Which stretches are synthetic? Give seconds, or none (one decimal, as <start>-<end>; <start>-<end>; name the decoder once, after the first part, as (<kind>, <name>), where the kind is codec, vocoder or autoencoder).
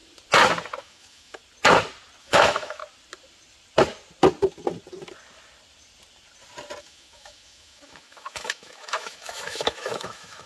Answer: 0.8-1.4 (autoencoder, DAC-VAE); 2.2-2.8; 6.8-10.5